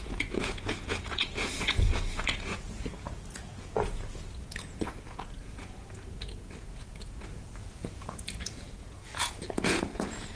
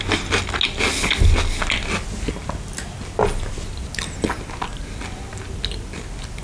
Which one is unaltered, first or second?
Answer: second